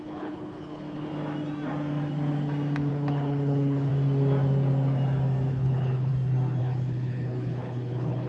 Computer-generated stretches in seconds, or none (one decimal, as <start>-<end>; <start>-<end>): 0.0-1.1; 2.9-3.9; 5.5-6.1; 6.6-8.3